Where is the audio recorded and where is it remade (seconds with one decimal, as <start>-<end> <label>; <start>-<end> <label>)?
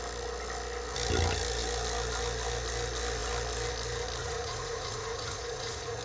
0.0-4.2 recorded; 4.2-6.0 remade